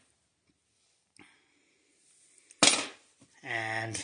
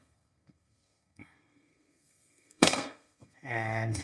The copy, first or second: second